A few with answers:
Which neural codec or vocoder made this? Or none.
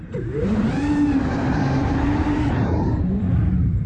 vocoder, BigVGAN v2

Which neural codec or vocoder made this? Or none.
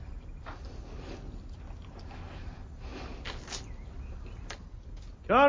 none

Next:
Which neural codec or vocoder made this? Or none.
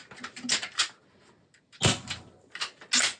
none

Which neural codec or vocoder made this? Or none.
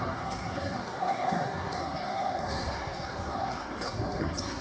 codec, SNAC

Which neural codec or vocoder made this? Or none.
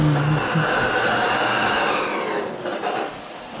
none